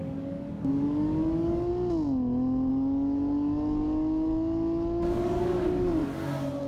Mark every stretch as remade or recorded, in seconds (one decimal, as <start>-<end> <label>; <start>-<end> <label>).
0.0-1.7 remade; 1.7-2.7 recorded; 2.7-6.0 remade; 6.0-6.7 recorded